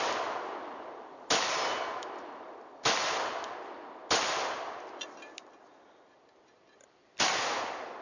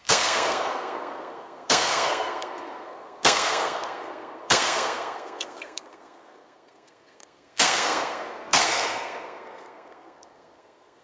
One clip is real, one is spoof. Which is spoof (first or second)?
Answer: second